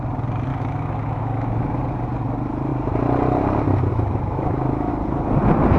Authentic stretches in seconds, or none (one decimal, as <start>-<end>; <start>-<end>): 0.0-0.5; 1.7-3.9; 4.9-5.8